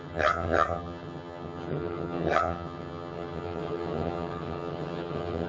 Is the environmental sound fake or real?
fake